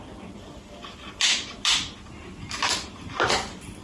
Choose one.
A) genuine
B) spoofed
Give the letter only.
A